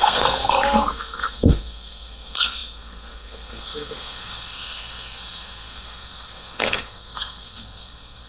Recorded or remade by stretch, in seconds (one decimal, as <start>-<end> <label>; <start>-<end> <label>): 0.0-8.3 remade